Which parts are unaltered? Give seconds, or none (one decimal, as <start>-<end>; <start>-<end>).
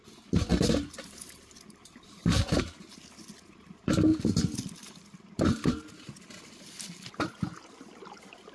0.0-0.5; 2.6-8.5